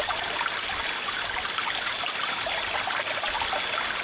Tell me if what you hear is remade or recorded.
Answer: recorded